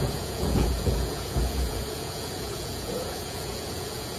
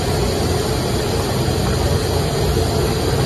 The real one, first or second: second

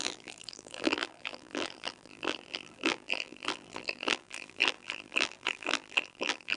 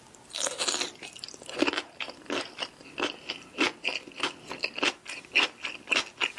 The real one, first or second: second